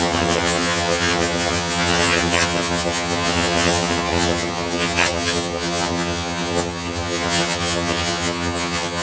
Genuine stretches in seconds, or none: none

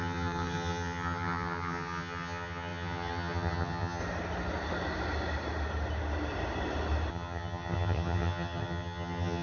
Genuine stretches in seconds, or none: 4.0-7.1

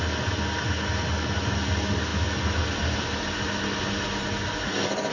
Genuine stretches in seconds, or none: 0.0-5.1

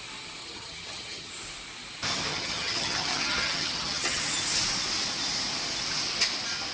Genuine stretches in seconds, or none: 0.0-0.4; 1.3-2.3; 4.2-6.7

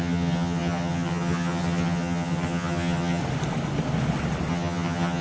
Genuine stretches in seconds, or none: 3.2-4.5

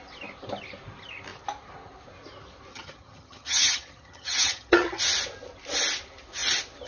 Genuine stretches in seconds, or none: 0.0-2.7; 5.0-6.9

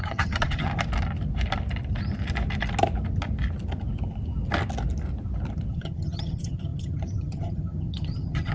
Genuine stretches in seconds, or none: 0.7-5.7